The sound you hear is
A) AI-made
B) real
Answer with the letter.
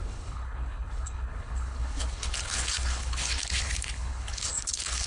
A